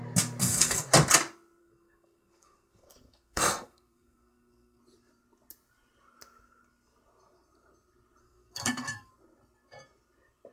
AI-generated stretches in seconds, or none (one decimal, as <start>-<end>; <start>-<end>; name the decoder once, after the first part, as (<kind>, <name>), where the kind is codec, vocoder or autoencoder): 0.4-0.9 (codec, SNAC); 1.6-4.8; 8.2-9.1